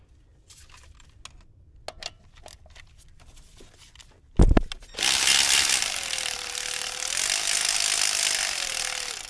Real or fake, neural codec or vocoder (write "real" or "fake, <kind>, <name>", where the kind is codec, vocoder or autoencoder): real